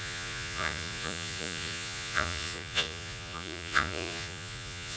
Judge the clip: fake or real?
fake